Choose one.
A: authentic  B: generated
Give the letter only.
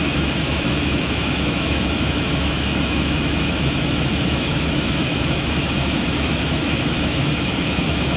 B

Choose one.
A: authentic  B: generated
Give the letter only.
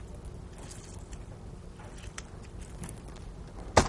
A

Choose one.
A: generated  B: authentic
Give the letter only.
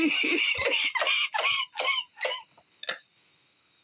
B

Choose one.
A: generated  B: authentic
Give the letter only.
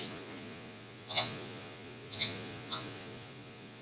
A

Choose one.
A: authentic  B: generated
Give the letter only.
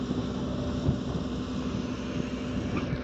A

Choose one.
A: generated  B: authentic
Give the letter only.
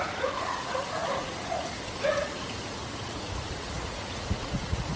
A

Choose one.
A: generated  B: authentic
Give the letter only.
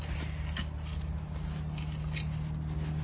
B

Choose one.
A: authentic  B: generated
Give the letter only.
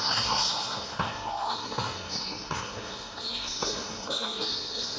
B